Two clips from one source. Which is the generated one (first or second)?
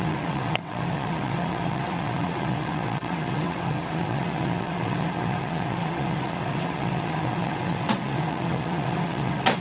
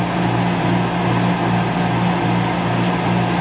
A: first